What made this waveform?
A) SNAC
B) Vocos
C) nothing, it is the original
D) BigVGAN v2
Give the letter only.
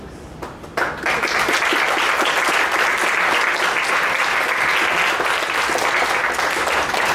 C